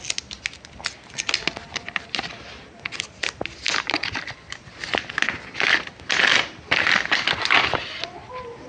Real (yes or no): yes